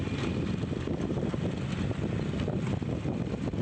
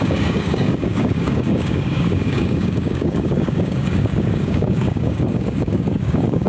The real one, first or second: first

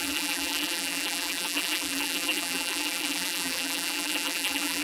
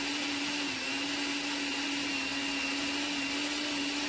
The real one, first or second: second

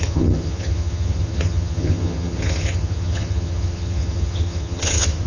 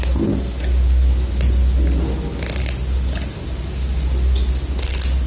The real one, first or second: second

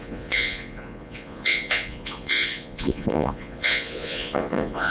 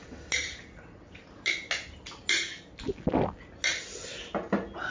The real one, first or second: second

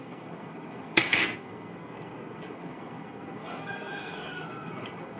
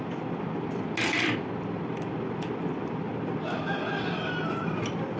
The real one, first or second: second